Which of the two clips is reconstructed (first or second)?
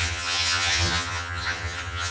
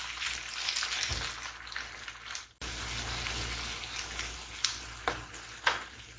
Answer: first